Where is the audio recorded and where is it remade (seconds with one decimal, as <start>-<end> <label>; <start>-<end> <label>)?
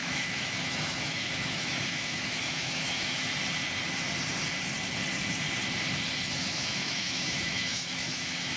0.0-3.3 remade; 3.3-6.4 recorded; 6.4-8.6 remade